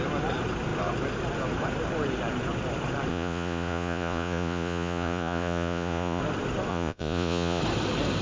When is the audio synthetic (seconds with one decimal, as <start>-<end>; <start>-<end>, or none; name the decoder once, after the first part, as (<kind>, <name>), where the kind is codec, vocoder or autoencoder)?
3.1-6.2 (vocoder, Vocos); 6.7-7.6